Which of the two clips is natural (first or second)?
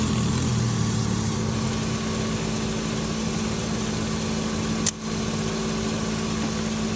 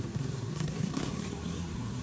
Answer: first